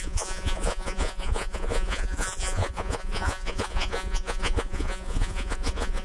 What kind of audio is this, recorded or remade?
remade